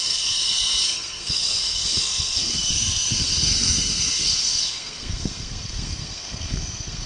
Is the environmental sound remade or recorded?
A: remade